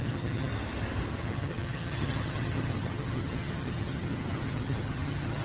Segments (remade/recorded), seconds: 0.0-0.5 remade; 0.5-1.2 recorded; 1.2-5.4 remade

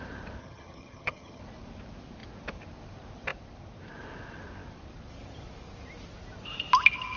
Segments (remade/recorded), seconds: 0.0-0.4 recorded; 0.4-1.4 remade; 1.4-7.2 recorded

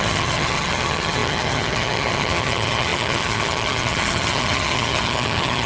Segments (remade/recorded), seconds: 0.0-5.7 remade

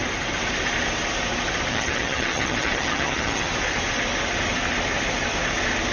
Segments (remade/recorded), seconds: 0.0-1.7 recorded; 1.7-3.5 remade; 3.5-5.9 recorded

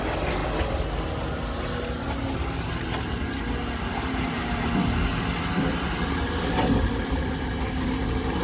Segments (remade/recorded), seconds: 0.0-8.4 recorded

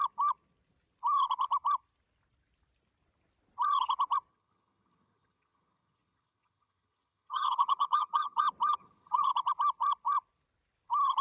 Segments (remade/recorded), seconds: 0.0-4.3 recorded; 4.3-8.4 remade; 8.4-8.8 recorded; 8.8-9.3 remade; 9.3-11.2 recorded

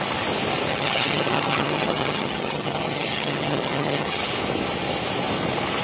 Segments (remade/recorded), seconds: 0.0-0.7 recorded; 0.7-4.2 remade; 4.2-5.8 recorded

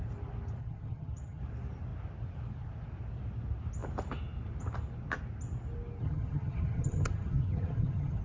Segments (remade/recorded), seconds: 0.0-0.6 recorded; 0.6-1.4 remade; 1.4-6.0 recorded; 6.0-8.2 remade